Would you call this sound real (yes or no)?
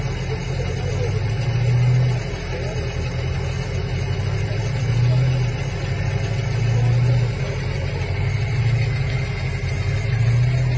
yes